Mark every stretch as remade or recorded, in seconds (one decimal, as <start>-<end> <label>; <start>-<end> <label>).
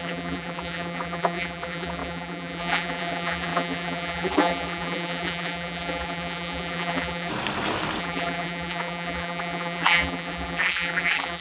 0.0-7.3 remade; 7.3-8.0 recorded; 8.0-11.4 remade